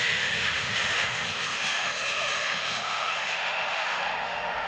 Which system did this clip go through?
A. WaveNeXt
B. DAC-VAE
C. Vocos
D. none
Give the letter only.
B